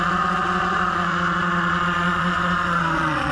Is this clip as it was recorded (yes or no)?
no